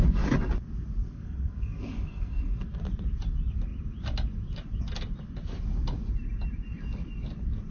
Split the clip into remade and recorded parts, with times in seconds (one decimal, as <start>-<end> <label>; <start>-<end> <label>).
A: 0.0-1.0 recorded; 1.0-2.8 remade; 2.8-7.7 recorded